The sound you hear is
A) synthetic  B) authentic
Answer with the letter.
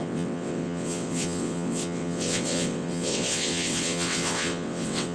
A